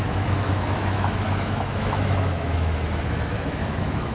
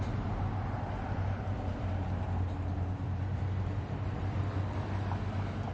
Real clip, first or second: second